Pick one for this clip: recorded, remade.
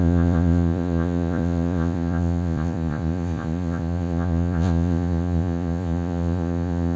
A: remade